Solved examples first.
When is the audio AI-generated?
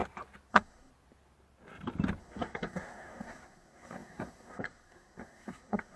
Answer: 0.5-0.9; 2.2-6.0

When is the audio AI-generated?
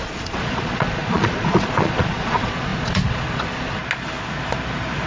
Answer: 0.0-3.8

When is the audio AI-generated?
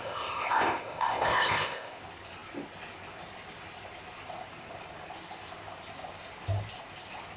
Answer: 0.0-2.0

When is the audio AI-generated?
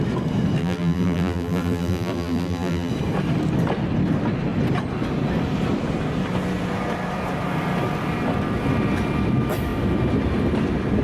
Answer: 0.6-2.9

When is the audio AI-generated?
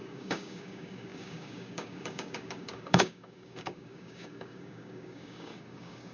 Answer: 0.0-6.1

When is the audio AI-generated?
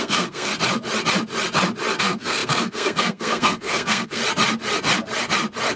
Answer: 0.0-0.5; 2.0-4.2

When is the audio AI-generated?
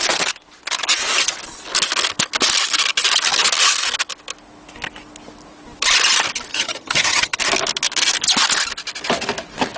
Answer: 6.5-7.4